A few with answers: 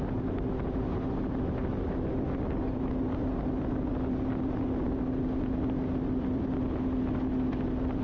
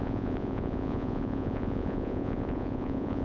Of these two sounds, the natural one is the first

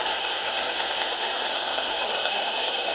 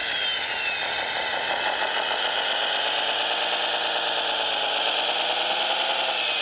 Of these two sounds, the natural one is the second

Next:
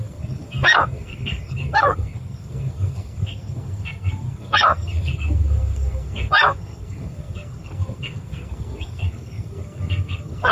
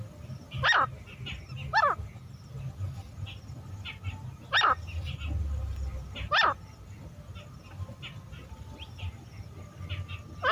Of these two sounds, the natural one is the second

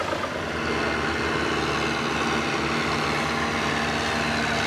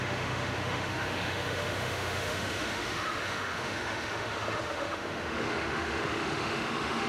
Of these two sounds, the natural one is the first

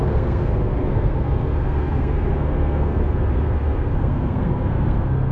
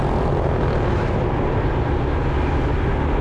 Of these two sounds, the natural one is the second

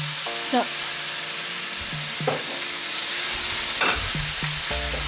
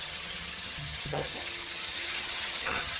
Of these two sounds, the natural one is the first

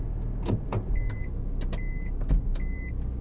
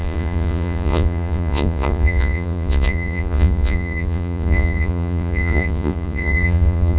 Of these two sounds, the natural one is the first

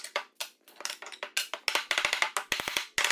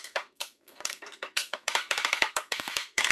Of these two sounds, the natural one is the first